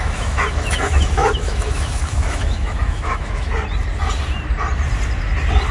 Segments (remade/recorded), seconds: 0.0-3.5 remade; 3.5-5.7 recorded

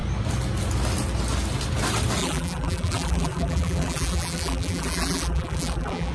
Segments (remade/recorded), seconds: 0.0-2.2 recorded; 2.2-6.1 remade

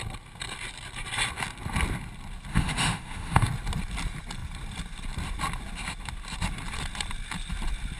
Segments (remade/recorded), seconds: 0.0-2.5 recorded; 2.5-3.5 remade; 3.5-8.0 recorded

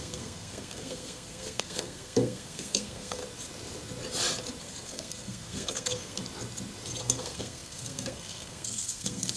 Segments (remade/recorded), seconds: 0.0-3.2 remade; 3.2-4.6 recorded; 4.6-6.2 remade; 6.2-7.0 recorded; 7.0-9.4 remade

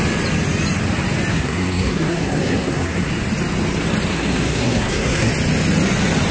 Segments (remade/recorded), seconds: 0.0-1.3 recorded; 1.3-3.1 remade; 3.1-4.1 recorded; 4.1-5.3 remade; 5.3-6.3 recorded

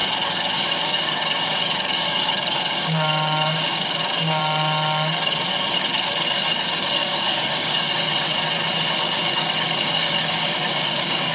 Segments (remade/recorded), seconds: 0.0-8.1 remade; 8.1-9.2 recorded; 9.2-11.3 remade

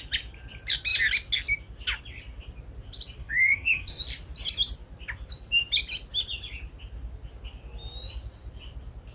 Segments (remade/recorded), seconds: 0.0-3.2 recorded; 3.2-4.0 remade; 4.0-9.1 recorded